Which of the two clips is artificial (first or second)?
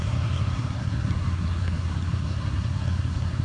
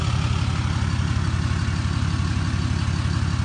first